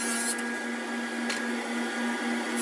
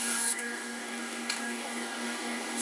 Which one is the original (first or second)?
first